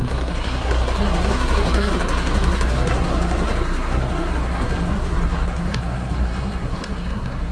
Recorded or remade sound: remade